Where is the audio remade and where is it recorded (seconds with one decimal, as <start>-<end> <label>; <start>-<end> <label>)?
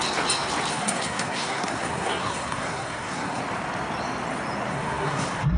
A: 0.0-0.7 recorded; 0.7-3.4 remade; 3.4-4.7 recorded; 4.7-5.6 remade